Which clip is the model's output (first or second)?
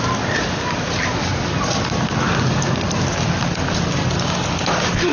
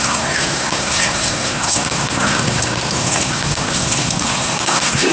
second